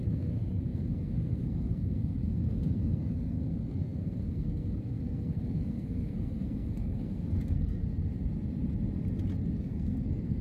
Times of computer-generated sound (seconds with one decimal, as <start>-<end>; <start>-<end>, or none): 0.0-7.8; 9.6-10.4